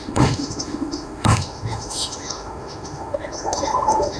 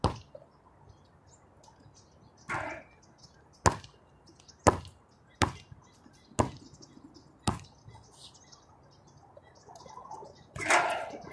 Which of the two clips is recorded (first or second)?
second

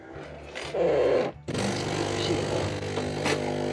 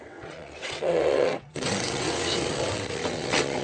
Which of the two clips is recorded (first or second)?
first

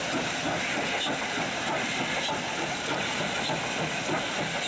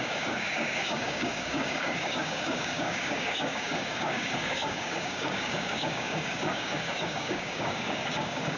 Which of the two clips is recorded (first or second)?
first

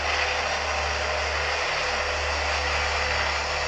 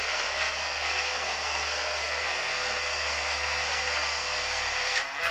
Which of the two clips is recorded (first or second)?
first